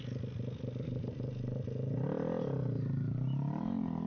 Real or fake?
real